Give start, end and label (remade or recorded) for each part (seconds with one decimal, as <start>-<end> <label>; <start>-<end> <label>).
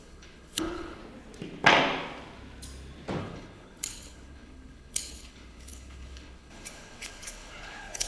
0.0-1.0 remade; 1.0-3.2 recorded; 3.2-8.1 remade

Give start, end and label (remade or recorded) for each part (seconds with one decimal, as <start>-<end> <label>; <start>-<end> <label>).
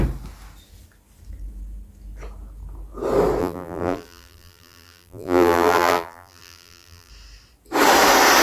0.0-3.4 recorded; 3.4-7.1 remade; 7.1-8.4 recorded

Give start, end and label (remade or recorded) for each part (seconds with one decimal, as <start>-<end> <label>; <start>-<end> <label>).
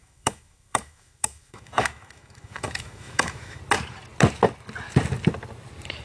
0.0-3.6 remade; 3.6-6.0 recorded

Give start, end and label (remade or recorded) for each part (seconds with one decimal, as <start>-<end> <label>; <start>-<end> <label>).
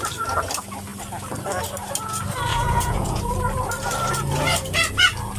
0.0-2.5 recorded; 2.5-3.2 remade; 3.2-5.4 recorded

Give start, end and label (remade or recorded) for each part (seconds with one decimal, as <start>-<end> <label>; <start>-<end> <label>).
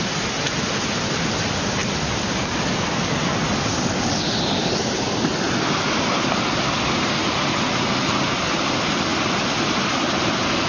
0.0-10.7 recorded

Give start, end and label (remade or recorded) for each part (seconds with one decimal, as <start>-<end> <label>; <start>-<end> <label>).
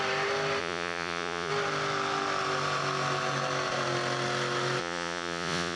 0.0-0.6 recorded; 0.6-1.5 remade; 1.5-4.8 recorded; 4.8-5.8 remade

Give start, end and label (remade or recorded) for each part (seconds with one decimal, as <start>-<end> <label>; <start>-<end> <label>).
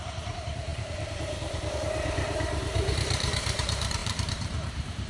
0.0-5.1 remade